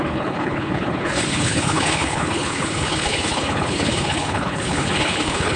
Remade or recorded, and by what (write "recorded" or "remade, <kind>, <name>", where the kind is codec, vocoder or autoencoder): remade, codec, HILCodec